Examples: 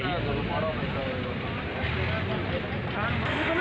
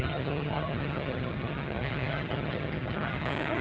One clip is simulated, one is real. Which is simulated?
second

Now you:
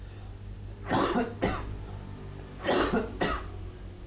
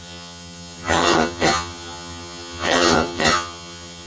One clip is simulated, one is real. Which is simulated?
second